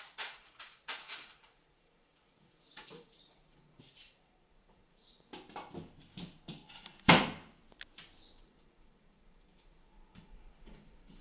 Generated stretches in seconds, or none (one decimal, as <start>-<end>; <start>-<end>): 0.0-5.3; 8.4-11.2